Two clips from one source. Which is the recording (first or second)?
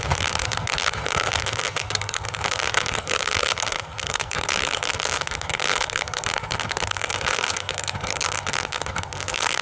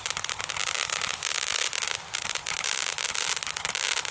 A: second